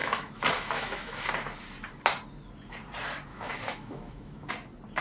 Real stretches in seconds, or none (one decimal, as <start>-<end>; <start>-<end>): 1.2-3.3; 4.5-5.0